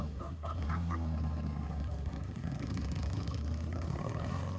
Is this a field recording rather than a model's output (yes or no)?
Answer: no